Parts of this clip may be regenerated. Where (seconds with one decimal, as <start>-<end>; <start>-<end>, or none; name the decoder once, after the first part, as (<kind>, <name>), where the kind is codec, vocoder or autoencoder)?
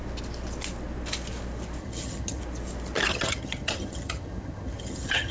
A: 1.8-2.4 (vocoder, HiFi-GAN); 3.1-5.3